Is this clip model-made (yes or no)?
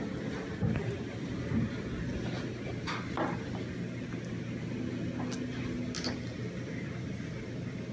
no